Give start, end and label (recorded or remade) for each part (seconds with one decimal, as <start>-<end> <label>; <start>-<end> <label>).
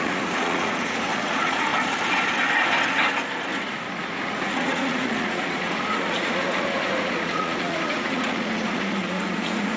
0.0-1.7 remade; 1.7-4.2 recorded; 4.2-9.8 remade